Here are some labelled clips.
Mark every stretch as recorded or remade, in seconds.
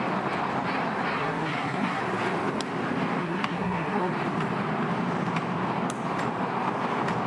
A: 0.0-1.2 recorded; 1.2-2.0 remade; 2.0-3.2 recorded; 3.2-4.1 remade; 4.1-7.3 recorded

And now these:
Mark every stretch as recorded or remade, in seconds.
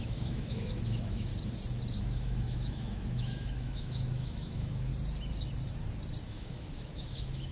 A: 0.0-1.3 remade; 1.3-2.0 recorded; 2.0-4.9 remade; 4.9-6.2 recorded; 6.2-7.5 remade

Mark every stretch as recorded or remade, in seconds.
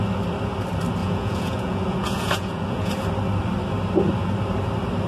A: 0.0-1.0 recorded; 1.0-2.9 remade; 2.9-5.1 recorded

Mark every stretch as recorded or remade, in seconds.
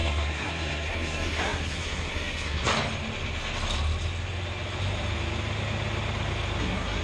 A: 0.0-2.7 remade; 2.7-6.6 recorded; 6.6-7.0 remade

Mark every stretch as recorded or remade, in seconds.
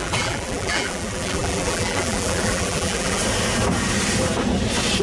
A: 0.0-3.2 remade; 3.2-5.0 recorded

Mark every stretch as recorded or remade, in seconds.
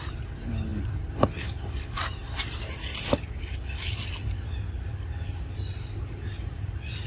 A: 0.0-7.1 recorded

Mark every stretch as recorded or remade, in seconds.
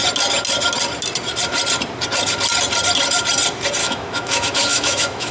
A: 0.0-3.8 recorded; 3.8-5.3 remade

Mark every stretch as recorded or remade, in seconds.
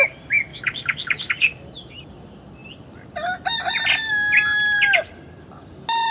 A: 0.0-0.5 recorded; 0.5-1.3 remade; 1.3-6.1 recorded